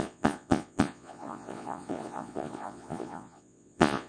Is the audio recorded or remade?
remade